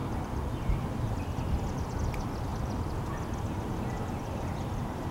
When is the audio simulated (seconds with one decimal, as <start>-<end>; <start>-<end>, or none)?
0.0-2.1